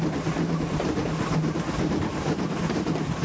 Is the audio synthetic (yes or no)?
yes